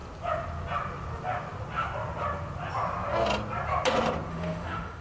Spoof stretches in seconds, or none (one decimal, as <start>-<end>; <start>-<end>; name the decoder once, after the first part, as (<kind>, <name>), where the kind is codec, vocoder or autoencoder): 4.3-5.0 (autoencoder, DAC-VAE)